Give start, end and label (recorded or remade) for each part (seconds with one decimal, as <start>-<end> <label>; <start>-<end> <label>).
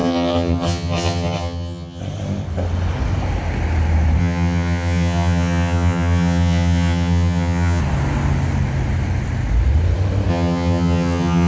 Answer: 0.0-2.0 remade; 2.0-4.2 recorded; 4.2-7.8 remade; 7.8-10.3 recorded; 10.3-11.5 remade